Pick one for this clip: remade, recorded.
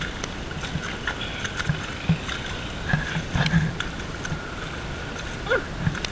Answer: recorded